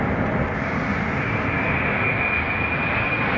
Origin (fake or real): real